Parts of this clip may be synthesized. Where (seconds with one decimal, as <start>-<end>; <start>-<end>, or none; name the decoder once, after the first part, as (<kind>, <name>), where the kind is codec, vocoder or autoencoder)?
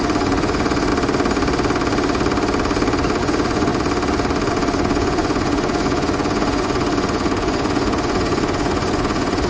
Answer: 0.0-0.9 (vocoder, Vocos); 3.2-3.7; 4.5-9.5